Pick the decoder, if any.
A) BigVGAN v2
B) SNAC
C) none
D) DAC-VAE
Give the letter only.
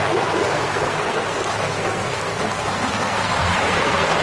B